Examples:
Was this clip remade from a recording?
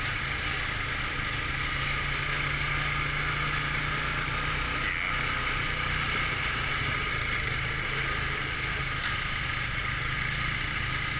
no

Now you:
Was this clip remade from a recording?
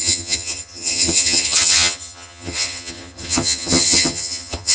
yes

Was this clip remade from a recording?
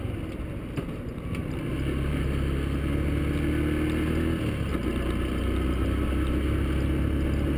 no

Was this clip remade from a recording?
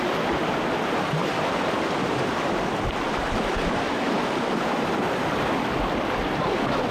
no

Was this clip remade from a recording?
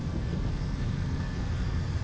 yes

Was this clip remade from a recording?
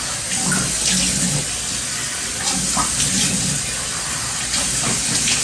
no